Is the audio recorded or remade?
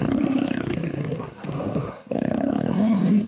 remade